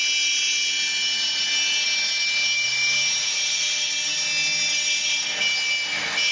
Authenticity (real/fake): real